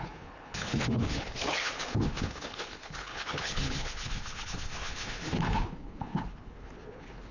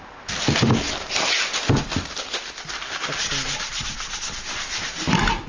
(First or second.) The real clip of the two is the second